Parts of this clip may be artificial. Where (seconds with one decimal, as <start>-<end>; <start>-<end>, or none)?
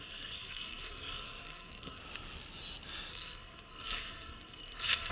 0.0-2.0; 3.1-5.1